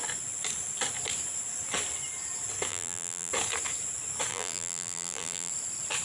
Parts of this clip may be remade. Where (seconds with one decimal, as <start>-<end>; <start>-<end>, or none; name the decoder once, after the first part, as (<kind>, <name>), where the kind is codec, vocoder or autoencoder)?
2.7-3.3 (vocoder, BigVGAN v2); 4.3-5.5